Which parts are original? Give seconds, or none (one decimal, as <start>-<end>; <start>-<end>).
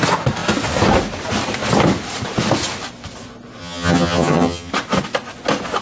0.0-3.6; 4.7-5.8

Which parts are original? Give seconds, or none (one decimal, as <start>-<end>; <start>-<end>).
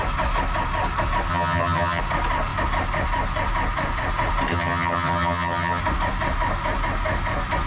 0.0-1.3; 2.0-4.5; 5.8-7.7